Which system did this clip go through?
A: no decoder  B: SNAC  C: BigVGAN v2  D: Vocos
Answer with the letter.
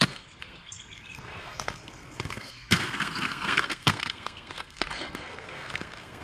B